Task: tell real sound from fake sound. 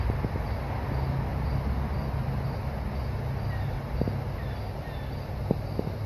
real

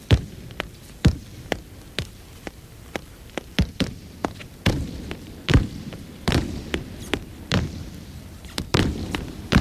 fake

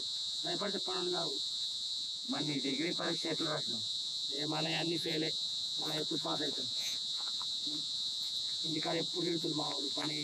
fake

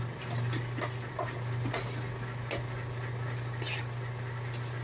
real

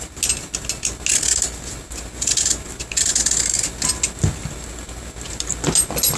real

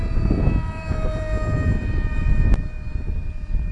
fake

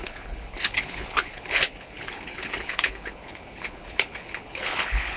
fake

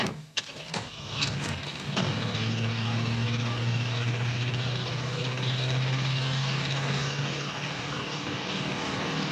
fake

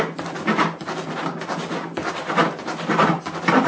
real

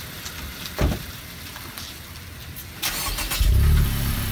fake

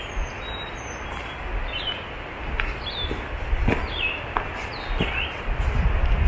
real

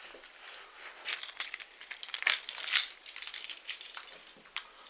real